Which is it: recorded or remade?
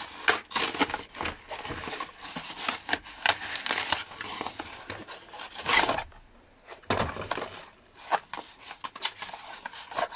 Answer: recorded